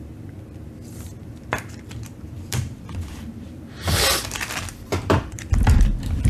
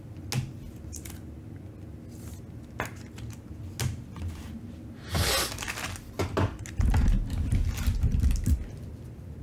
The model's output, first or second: first